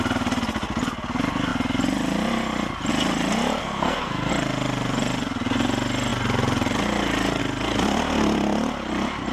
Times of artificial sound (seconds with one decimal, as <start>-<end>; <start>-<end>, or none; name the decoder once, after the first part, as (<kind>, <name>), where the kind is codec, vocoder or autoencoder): 3.6-4.3 (codec, SNAC)